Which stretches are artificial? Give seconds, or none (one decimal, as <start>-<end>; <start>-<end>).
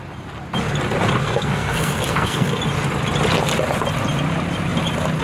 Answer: 1.2-2.6